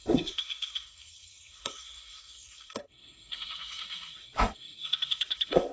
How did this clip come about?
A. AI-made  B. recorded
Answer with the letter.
A